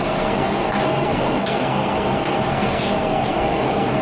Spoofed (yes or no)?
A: yes